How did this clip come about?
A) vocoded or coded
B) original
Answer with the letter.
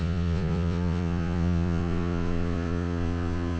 A